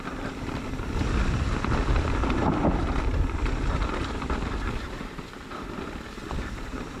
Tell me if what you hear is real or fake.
fake